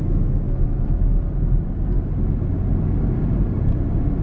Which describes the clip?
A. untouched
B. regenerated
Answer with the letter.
A